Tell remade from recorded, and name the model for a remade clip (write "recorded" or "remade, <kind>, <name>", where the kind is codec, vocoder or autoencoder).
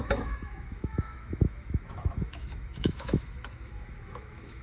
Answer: remade, autoencoder, DAC-VAE